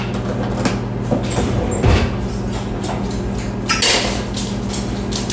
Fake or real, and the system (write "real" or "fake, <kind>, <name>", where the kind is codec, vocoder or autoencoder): real